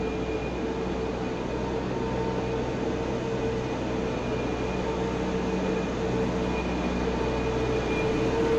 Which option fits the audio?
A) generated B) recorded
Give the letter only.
B